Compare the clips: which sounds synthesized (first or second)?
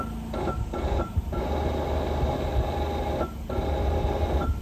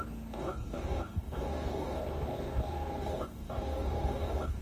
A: second